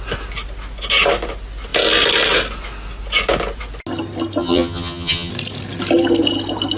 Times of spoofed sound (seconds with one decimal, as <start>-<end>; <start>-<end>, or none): 4.4-5.3